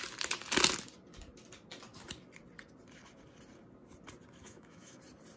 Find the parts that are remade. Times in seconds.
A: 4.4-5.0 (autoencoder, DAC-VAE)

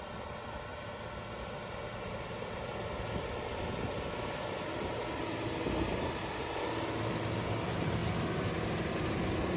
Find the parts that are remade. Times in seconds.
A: none

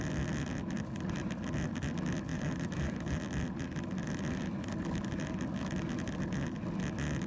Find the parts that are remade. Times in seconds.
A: 2.3-3.2 (vocoder, BigVGAN v2)

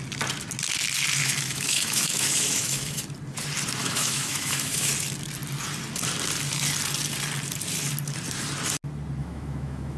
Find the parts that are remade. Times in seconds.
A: 1.2-3.0 (autoencoder, DAC-VAE); 3.8-4.9; 9.2-10.0

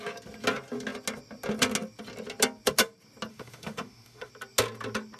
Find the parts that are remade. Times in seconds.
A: 3.3-4.3 (autoencoder, DAC-VAE)